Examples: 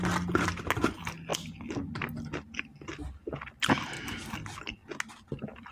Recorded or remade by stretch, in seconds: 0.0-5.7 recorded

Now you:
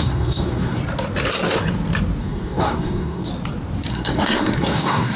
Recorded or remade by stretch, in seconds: 0.0-0.8 remade; 0.8-2.2 recorded; 2.2-3.3 remade; 3.3-3.9 recorded; 3.9-5.2 remade

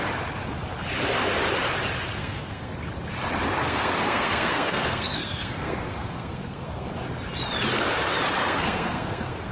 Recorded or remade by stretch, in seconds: 0.0-2.2 recorded; 2.2-2.7 remade; 2.7-3.6 recorded; 3.6-6.9 remade; 6.9-8.4 recorded; 8.4-9.5 remade